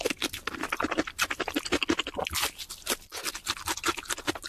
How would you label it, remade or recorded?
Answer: recorded